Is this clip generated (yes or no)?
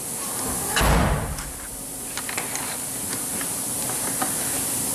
no